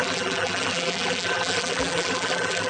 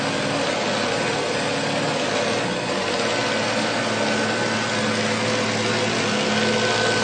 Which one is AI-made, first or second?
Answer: first